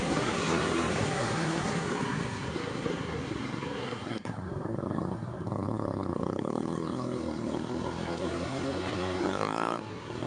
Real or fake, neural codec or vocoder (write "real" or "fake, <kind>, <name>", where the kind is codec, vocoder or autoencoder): fake, codec, SNAC